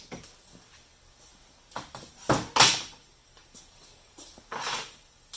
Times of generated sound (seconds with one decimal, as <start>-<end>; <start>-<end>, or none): 3.4-4.7